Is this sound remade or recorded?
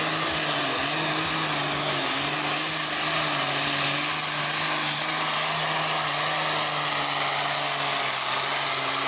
recorded